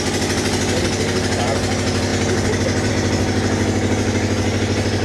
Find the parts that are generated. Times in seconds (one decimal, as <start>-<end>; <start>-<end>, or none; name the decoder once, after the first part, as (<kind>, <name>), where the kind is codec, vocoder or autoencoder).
none